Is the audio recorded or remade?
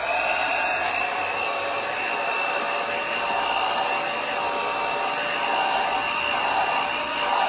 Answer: recorded